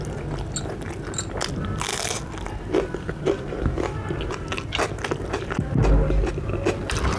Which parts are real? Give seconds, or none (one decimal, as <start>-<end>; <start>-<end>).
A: 0.0-7.2